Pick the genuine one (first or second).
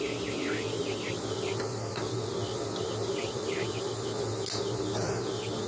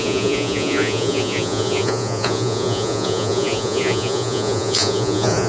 first